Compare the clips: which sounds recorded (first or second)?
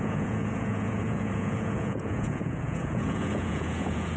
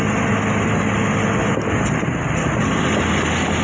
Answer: second